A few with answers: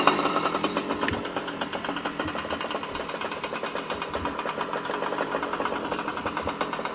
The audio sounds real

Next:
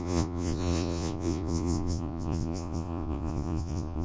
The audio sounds fake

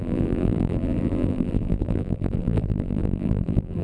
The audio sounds fake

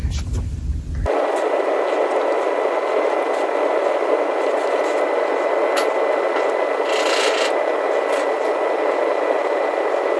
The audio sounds real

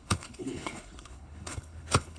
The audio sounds fake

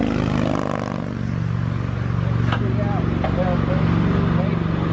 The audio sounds real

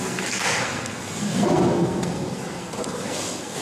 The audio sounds fake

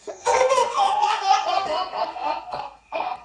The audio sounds fake